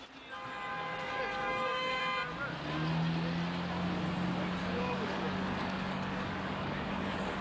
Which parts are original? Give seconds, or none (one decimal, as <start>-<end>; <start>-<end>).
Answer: 0.0-1.0; 2.0-4.6